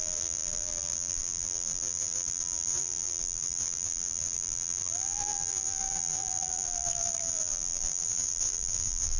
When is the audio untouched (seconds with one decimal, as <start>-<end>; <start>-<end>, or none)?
none